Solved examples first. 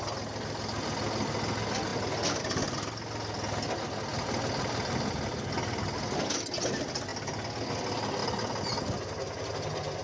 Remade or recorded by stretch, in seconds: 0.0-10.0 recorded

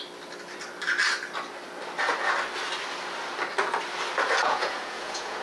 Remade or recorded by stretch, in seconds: 0.0-4.4 recorded; 4.4-5.4 remade